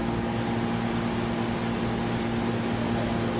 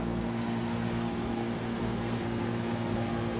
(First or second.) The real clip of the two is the first